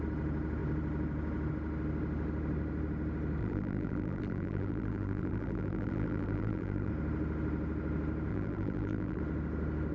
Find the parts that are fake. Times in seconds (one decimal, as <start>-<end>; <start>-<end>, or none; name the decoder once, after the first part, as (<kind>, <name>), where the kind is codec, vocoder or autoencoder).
3.4-6.9 (vocoder, BigVGAN v2); 8.3-9.2